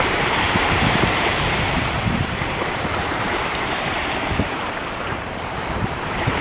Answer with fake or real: fake